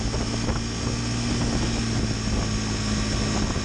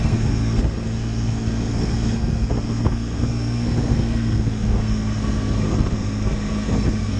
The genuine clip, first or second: first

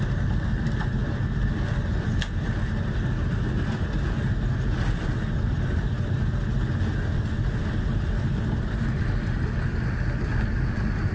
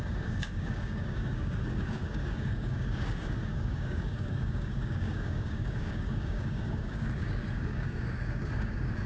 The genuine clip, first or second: first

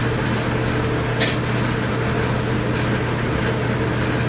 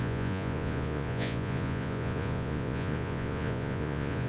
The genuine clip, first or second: first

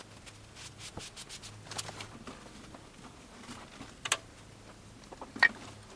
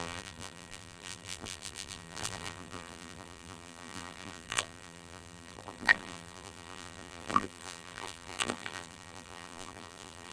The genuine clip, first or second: first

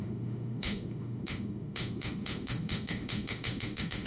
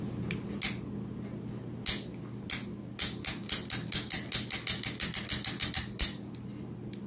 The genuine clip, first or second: second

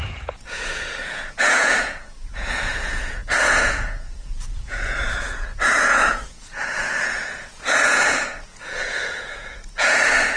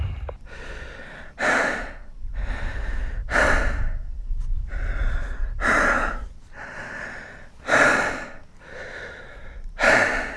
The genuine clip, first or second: second